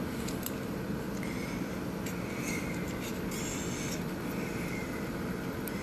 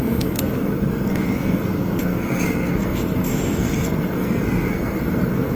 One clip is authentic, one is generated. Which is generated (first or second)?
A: second